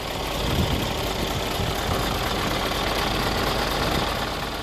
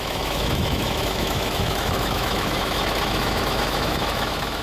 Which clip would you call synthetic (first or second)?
second